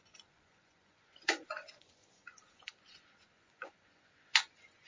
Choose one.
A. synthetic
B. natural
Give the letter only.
A